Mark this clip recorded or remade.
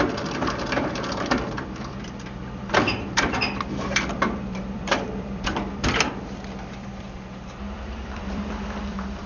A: remade